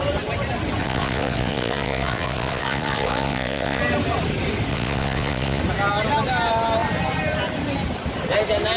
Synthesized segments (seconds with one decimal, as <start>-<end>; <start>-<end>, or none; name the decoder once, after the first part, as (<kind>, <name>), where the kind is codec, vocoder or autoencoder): 0.8-3.8 (vocoder, WaveNeXt); 4.7-5.6